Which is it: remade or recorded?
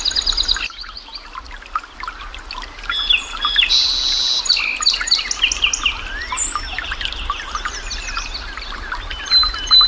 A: recorded